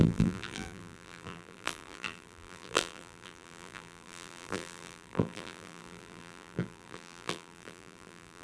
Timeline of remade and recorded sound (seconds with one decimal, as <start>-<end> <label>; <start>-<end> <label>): 0.0-8.4 remade